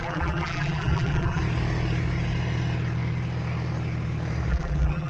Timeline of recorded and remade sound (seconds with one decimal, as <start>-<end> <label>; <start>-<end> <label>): 0.0-1.4 remade; 1.4-4.5 recorded; 4.5-5.1 remade